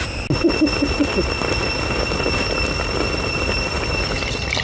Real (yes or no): yes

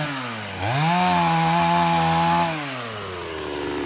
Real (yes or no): yes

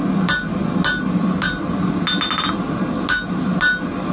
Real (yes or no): yes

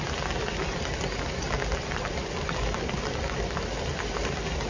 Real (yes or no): yes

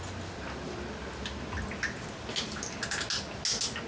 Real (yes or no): yes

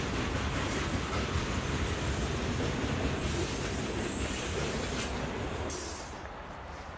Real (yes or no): yes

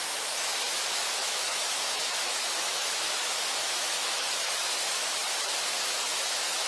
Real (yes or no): no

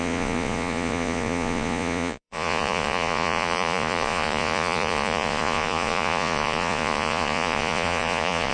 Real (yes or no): no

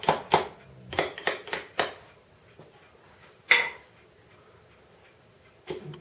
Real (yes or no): yes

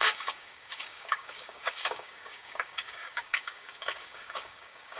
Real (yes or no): no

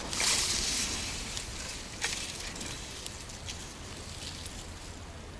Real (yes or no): yes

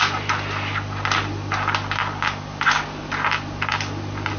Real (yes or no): yes